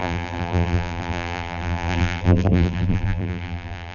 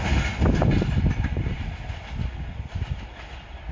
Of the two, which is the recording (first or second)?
second